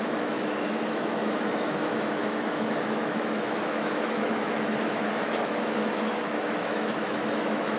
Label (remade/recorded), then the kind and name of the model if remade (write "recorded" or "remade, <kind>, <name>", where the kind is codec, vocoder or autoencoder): remade, autoencoder, DAC-VAE